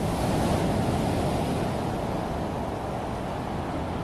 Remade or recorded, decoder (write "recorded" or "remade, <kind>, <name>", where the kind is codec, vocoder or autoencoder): recorded